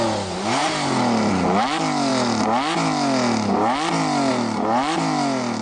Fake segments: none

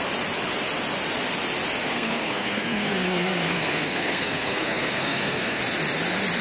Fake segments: 1.8-5.6 (codec, SNAC)

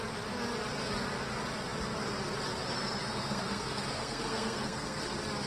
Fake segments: 3.0-5.0 (codec, SNAC)

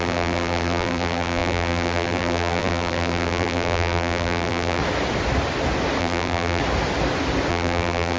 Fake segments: 0.0-4.8 (vocoder, BigVGAN v2); 6.0-6.6; 7.5-8.2